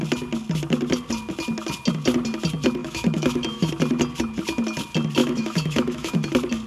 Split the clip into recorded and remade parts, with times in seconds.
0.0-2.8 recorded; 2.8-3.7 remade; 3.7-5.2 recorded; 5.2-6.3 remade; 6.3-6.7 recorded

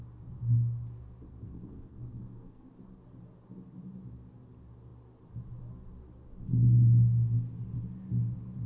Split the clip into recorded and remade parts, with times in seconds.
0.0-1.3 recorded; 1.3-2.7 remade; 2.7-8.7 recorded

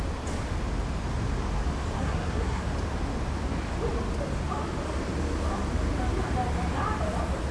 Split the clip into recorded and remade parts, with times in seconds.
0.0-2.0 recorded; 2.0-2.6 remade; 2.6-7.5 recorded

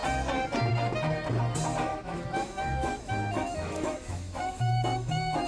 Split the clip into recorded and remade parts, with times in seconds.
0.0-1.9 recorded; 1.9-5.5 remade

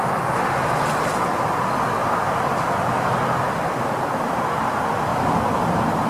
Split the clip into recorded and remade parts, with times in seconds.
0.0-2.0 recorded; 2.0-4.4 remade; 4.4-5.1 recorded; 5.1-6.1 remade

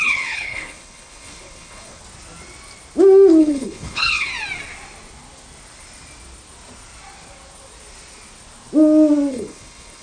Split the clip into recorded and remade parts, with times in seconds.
0.0-2.0 remade; 2.0-3.4 recorded; 3.4-4.3 remade; 4.3-9.3 recorded; 9.3-10.0 remade

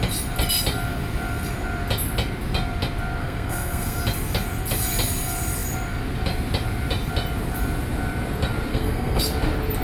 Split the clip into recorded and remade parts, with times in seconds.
0.0-3.2 recorded; 3.2-4.0 remade; 4.0-8.7 recorded; 8.7-9.2 remade; 9.2-9.8 recorded